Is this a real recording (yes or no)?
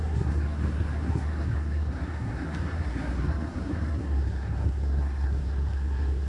no